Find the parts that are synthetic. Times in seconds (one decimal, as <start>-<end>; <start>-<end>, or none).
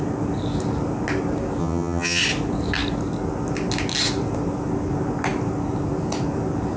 1.6-2.2